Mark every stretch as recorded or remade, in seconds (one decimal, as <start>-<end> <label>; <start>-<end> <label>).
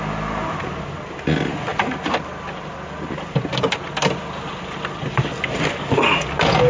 0.0-6.7 recorded